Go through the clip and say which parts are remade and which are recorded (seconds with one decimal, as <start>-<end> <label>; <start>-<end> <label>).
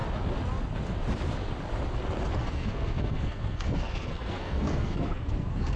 0.0-2.4 recorded; 2.4-5.8 remade